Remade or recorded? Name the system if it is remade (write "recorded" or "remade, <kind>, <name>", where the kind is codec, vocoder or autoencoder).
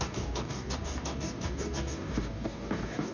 remade, codec, DAC